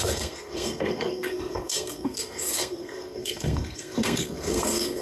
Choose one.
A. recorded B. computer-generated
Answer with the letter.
B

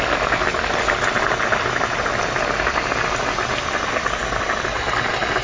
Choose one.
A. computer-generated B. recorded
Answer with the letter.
B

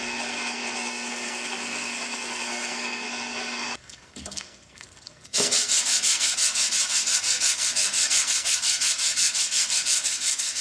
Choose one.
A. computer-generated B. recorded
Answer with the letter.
A